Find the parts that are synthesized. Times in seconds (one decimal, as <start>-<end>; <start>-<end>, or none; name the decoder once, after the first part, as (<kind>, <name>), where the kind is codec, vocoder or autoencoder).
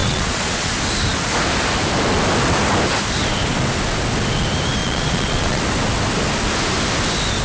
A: 0.0-0.7 (vocoder, Vocos); 4.8-5.6